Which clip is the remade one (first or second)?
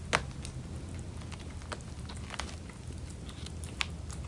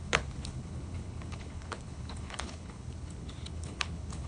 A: second